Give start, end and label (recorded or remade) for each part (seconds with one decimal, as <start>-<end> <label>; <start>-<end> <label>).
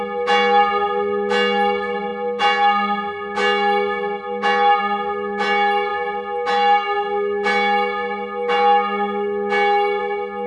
0.0-10.5 recorded